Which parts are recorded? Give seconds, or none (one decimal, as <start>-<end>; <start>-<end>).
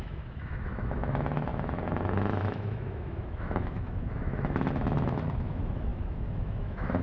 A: none